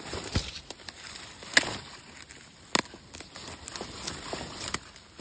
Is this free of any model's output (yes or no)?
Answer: yes